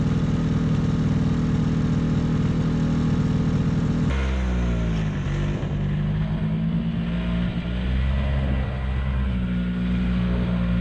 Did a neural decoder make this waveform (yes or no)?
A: no